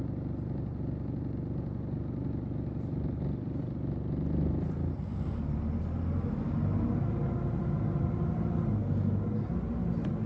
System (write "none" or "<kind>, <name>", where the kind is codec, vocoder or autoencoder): none